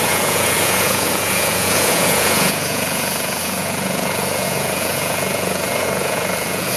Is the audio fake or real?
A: fake